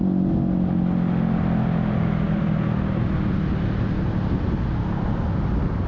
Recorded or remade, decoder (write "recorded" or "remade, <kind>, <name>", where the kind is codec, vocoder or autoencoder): recorded